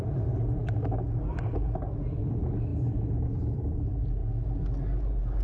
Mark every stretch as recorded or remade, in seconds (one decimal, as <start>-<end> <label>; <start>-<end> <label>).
0.0-4.2 remade; 4.2-5.4 recorded